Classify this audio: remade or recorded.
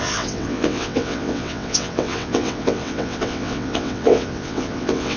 remade